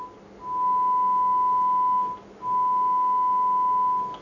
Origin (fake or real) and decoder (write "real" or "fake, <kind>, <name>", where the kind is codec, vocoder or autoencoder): real